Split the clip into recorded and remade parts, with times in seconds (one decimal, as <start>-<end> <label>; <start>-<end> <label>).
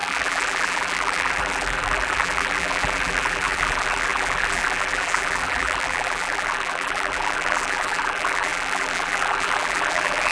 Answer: 0.0-10.3 remade